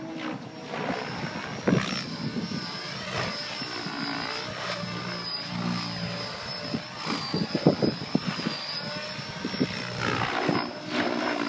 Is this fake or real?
real